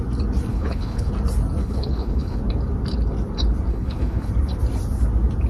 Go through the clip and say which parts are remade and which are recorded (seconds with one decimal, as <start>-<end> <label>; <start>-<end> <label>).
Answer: 0.0-0.5 recorded; 0.5-1.1 remade; 1.1-1.6 recorded; 1.6-2.4 remade; 2.4-3.7 recorded; 3.7-4.3 remade; 4.3-5.5 recorded